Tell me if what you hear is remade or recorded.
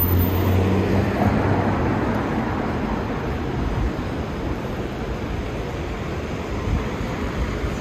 recorded